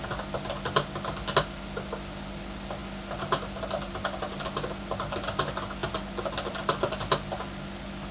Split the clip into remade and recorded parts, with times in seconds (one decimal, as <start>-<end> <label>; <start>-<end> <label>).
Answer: 0.0-2.8 remade; 2.8-3.9 recorded; 3.9-5.8 remade; 5.8-6.3 recorded; 6.3-8.1 remade